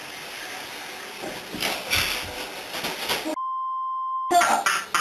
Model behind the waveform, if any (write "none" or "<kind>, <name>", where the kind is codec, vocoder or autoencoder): none